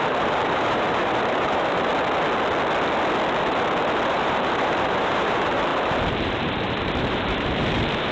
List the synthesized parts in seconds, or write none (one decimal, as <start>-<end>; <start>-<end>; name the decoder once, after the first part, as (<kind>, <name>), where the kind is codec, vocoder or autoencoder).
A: 0.0-1.9 (vocoder, BigVGAN v2); 4.1-8.1